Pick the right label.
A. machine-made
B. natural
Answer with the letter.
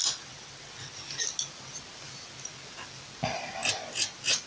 B